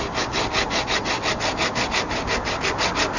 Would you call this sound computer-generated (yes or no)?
no